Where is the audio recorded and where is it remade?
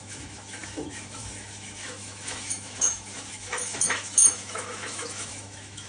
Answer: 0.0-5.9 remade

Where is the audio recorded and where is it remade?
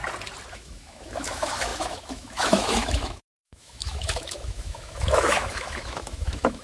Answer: 0.0-0.5 recorded; 0.5-6.6 remade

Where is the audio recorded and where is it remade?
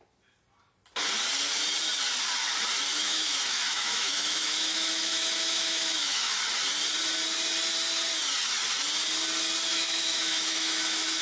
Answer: 0.0-2.9 recorded; 2.9-6.4 remade; 6.4-9.7 recorded; 9.7-11.2 remade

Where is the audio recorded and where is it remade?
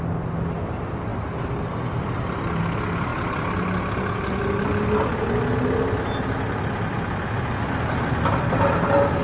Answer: 0.0-9.2 recorded